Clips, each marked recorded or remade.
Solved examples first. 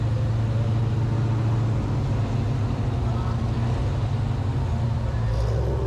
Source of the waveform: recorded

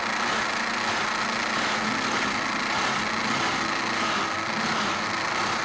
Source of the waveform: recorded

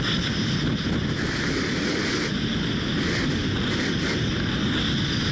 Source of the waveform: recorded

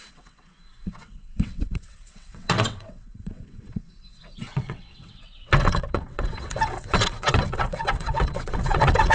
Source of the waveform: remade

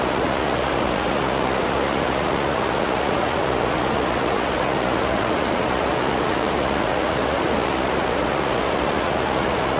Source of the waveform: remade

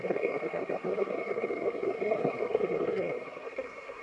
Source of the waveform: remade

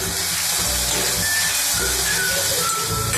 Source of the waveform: recorded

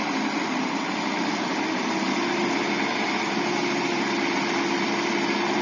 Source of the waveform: recorded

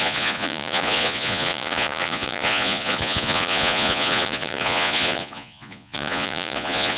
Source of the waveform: remade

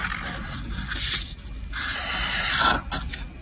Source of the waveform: recorded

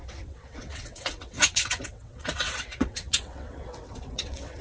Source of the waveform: remade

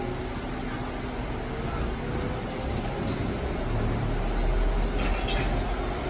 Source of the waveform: recorded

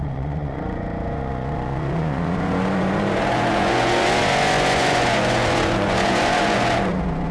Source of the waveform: remade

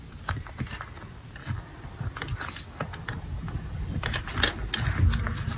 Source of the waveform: recorded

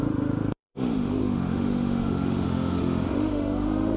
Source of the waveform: remade